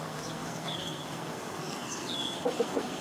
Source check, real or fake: fake